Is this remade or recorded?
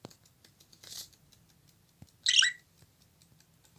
recorded